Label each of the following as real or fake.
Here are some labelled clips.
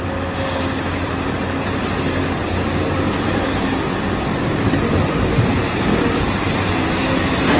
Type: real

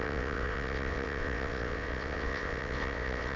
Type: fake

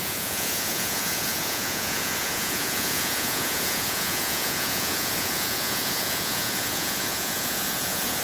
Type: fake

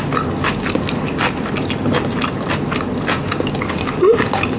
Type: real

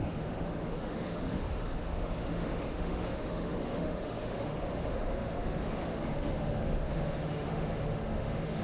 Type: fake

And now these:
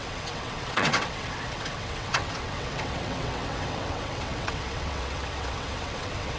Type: fake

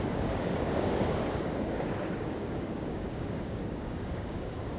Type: fake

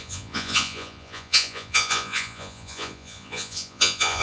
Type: fake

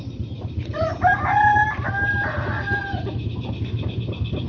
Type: real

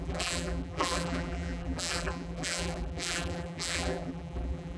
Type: fake